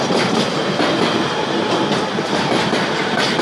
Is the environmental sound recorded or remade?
recorded